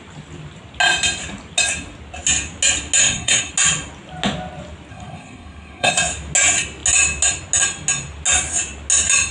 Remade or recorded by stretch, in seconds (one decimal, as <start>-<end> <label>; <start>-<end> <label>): 0.0-3.0 recorded; 3.0-3.5 remade; 3.5-4.9 recorded; 4.9-5.9 remade; 5.9-9.3 recorded

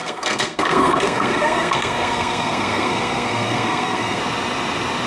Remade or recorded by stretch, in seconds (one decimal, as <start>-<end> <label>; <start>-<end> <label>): 0.0-4.2 remade; 4.2-5.1 recorded

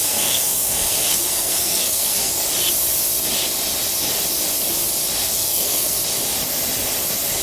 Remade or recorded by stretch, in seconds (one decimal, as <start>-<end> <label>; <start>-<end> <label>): 0.0-2.3 remade; 2.3-5.2 recorded; 5.2-6.0 remade; 6.0-7.4 recorded

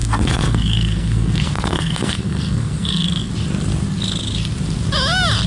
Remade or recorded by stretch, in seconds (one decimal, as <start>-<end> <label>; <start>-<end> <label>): 0.0-3.3 remade; 3.3-5.5 recorded

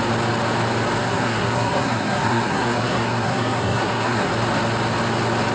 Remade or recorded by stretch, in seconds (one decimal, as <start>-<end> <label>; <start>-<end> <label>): 0.0-1.0 recorded; 1.0-4.3 remade; 4.3-5.5 recorded

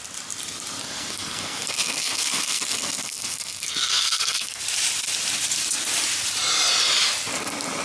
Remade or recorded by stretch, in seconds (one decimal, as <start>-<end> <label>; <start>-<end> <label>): 0.0-0.8 recorded; 0.8-4.6 remade; 4.6-7.8 recorded

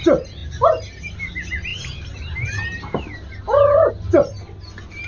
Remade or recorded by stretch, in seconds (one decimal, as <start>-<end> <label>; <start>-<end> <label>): 0.0-5.1 recorded